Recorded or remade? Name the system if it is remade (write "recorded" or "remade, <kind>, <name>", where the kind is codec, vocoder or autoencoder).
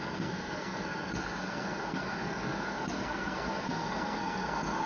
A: remade, codec, SNAC